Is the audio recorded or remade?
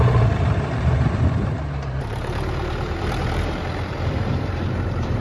remade